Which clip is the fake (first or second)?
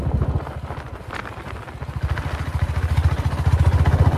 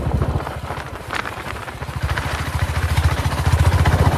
second